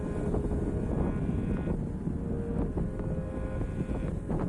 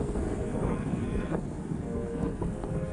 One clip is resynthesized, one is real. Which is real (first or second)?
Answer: first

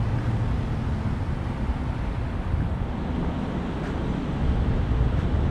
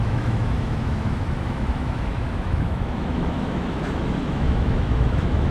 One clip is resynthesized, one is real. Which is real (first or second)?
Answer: first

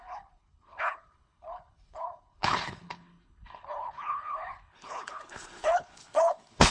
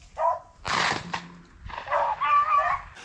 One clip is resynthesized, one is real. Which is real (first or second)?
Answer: second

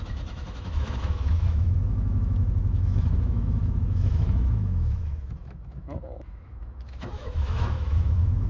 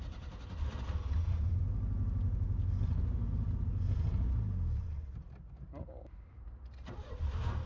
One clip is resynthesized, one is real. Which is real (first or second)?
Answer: second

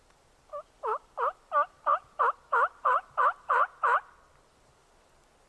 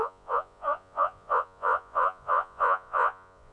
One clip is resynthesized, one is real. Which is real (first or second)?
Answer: first